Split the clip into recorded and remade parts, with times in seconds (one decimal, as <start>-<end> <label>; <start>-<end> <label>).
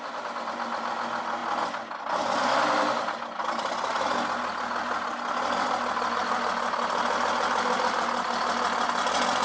0.0-9.4 recorded